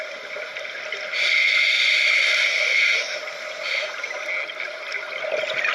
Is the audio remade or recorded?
recorded